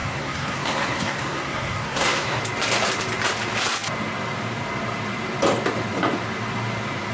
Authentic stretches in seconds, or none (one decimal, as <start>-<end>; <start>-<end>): 2.4-7.1